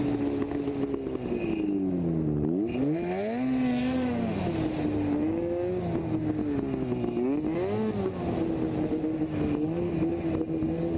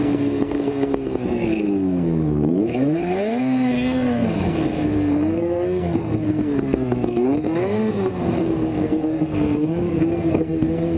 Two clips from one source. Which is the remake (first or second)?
second